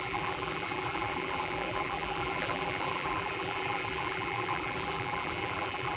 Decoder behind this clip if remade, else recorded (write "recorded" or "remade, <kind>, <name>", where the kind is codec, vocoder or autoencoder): remade, vocoder, BigVGAN v2